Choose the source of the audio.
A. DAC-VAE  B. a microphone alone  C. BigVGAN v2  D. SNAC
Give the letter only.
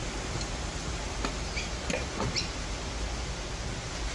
B